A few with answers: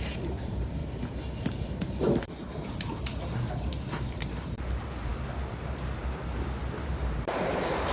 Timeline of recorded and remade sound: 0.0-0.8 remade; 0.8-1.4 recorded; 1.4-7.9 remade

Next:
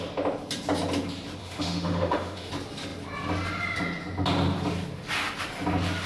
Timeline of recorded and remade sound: 0.0-1.4 recorded; 1.4-2.5 remade; 2.5-6.1 recorded

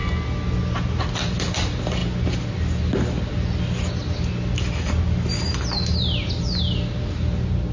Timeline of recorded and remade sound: 0.0-7.7 recorded

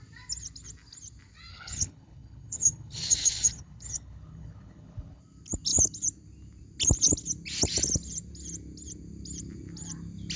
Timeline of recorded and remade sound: 0.0-1.5 recorded; 1.5-5.2 remade; 5.2-10.4 recorded

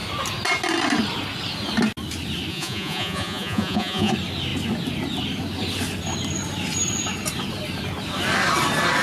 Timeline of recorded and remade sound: 0.0-2.5 recorded; 2.5-4.1 remade; 4.1-9.0 recorded

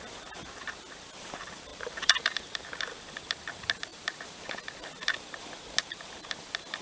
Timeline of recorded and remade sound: 0.0-1.7 recorded; 1.7-2.4 remade; 2.4-6.8 recorded